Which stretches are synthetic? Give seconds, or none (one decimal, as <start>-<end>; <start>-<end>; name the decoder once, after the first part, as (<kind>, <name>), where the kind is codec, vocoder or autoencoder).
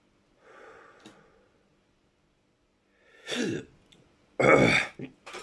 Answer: none